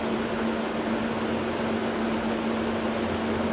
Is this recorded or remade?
recorded